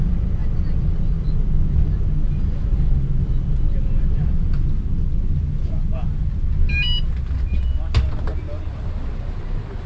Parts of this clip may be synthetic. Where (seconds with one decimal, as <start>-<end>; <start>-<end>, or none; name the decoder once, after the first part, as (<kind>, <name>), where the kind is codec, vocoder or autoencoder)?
none